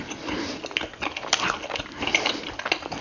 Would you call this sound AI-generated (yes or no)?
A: no